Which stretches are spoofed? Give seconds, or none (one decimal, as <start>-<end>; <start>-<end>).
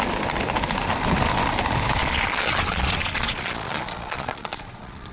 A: 2.0-5.1